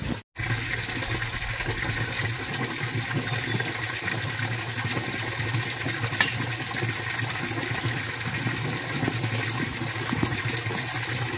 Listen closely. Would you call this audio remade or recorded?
recorded